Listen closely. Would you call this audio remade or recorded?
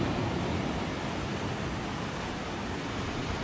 recorded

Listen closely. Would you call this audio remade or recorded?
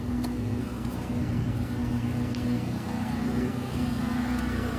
remade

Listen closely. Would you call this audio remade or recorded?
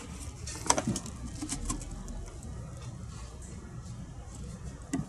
recorded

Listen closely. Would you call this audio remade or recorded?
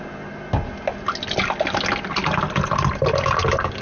recorded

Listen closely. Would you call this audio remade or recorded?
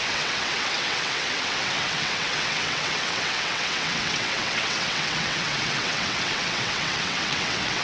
remade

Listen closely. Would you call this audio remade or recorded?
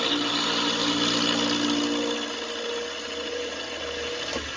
recorded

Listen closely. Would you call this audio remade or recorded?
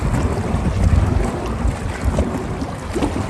recorded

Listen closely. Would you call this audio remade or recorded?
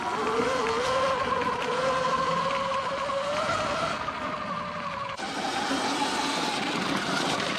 recorded